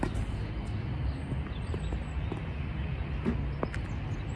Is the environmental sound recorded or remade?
recorded